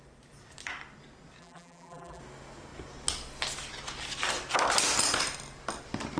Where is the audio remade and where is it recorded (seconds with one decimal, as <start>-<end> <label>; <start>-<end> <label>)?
0.0-1.4 recorded; 1.4-2.2 remade; 2.2-6.2 recorded